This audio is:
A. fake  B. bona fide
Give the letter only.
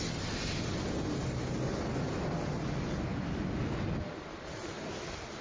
B